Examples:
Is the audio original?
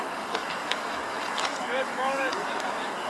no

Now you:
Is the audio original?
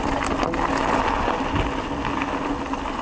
yes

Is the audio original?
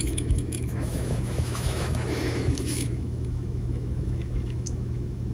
no